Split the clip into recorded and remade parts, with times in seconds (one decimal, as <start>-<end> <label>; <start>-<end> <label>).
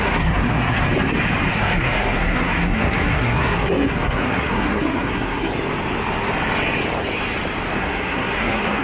0.0-0.9 remade; 0.9-1.5 recorded; 1.5-5.5 remade; 5.5-7.8 recorded; 7.8-8.8 remade